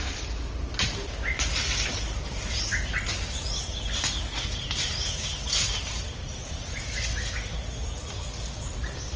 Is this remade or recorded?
recorded